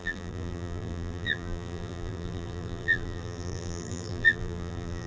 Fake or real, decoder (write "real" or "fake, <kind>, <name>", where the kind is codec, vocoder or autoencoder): fake, vocoder, BigVGAN v2